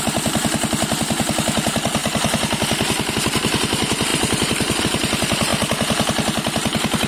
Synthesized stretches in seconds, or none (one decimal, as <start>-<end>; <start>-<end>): 4.1-4.8